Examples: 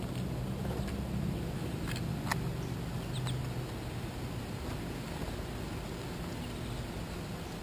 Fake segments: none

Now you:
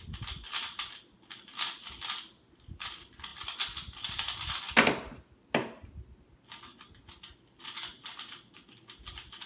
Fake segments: none

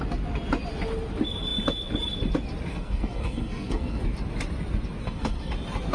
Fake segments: 2.7-4.0; 5.0-5.5